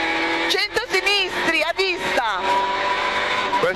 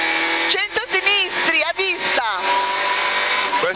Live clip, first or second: second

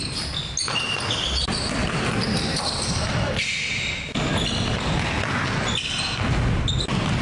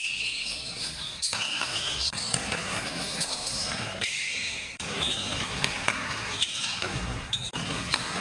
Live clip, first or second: first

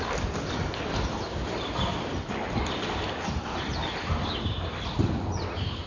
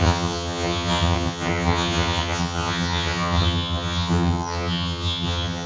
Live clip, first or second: first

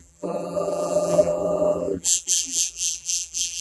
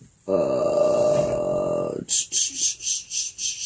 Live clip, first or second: second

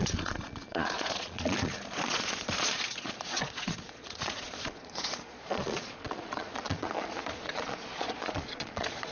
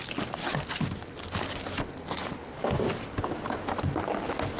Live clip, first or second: second